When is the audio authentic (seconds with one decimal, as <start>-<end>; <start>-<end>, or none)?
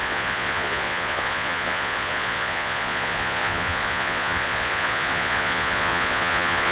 none